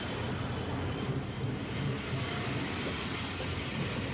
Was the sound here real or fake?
real